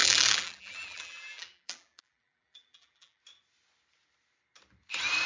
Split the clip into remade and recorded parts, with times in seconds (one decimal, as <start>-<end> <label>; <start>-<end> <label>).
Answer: 0.0-3.2 remade; 3.2-5.3 recorded